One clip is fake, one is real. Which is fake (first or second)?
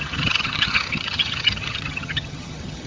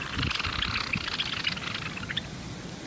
first